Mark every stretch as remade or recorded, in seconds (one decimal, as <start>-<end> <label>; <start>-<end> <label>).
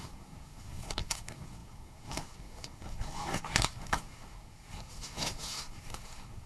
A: 0.0-6.5 remade